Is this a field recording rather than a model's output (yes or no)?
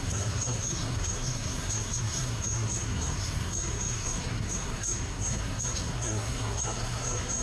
no